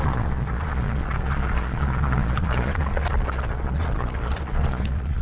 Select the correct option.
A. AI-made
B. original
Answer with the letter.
A